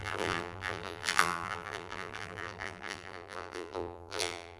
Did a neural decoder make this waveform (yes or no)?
yes